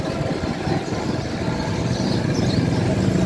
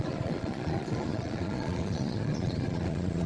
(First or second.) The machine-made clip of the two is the second